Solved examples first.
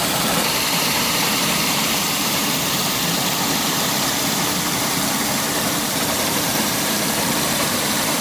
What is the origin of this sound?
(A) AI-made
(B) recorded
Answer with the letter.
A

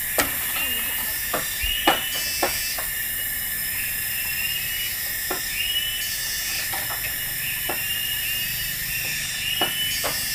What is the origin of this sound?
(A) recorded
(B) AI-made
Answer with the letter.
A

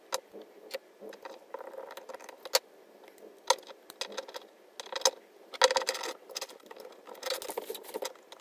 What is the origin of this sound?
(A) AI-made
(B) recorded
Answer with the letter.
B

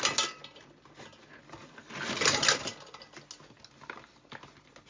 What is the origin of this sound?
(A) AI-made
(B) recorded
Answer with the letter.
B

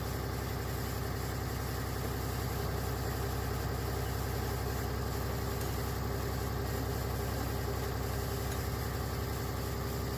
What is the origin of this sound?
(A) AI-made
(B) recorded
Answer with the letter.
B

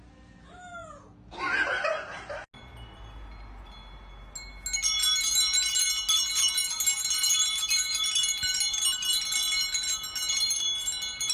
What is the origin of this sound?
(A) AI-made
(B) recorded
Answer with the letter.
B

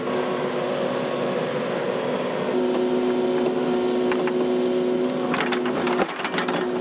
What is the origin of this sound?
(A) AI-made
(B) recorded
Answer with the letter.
B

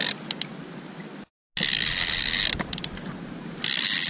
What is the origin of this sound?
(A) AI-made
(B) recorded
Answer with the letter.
B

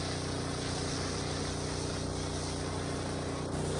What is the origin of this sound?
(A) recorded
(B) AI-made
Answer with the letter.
A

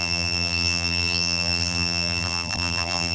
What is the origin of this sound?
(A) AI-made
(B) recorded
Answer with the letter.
A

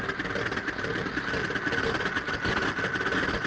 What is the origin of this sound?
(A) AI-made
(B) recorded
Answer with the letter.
B